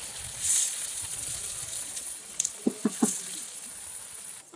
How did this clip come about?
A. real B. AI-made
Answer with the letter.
B